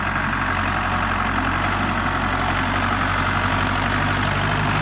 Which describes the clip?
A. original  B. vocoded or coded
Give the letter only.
A